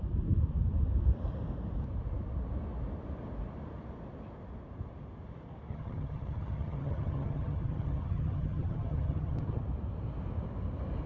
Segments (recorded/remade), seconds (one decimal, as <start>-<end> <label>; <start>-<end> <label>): 0.0-5.7 recorded; 5.7-9.6 remade; 9.6-11.1 recorded